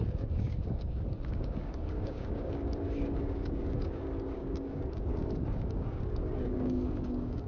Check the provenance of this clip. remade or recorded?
remade